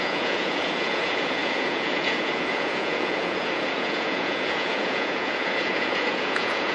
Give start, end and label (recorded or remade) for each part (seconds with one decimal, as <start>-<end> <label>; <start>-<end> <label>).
0.0-6.7 remade